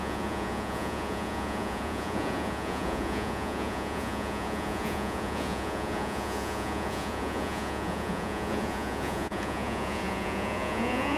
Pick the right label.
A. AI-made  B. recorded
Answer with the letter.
A